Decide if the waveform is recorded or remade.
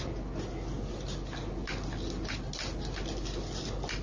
recorded